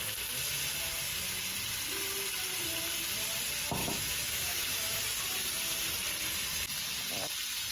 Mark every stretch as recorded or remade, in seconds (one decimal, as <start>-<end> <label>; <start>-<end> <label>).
0.0-3.8 recorded; 3.8-5.0 remade; 5.0-7.7 recorded